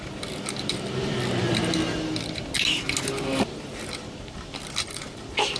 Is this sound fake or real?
real